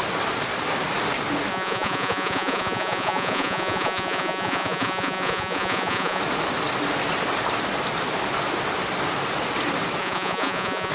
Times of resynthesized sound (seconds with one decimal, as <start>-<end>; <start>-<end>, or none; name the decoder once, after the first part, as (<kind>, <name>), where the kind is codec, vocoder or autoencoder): 1.5-6.2 (vocoder, Vocos); 10.0-10.9

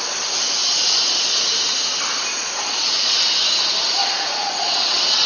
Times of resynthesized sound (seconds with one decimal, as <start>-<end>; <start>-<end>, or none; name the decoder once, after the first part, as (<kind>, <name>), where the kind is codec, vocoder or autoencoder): 0.6-1.4 (vocoder, Vocos); 2.3-3.1; 4.0-5.3

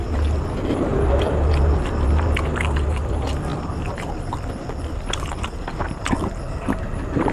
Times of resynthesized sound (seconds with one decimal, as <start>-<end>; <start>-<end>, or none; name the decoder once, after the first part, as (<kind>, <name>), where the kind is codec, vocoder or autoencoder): none

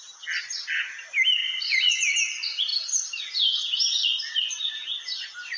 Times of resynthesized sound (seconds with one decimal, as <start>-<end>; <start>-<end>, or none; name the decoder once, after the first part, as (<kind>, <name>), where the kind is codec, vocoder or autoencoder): 1.4-2.0 (vocoder, Vocos)